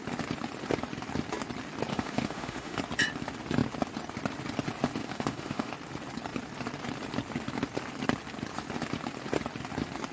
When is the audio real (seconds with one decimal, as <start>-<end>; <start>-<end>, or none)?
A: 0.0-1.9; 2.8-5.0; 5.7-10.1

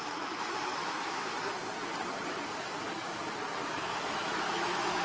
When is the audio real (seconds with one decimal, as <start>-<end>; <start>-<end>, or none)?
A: 1.3-3.6

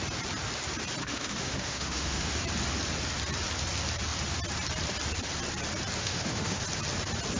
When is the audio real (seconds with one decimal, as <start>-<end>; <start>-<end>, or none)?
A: 0.0-1.0; 2.4-6.0; 6.6-7.4

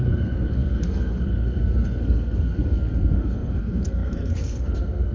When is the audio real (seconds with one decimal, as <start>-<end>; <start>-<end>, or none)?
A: none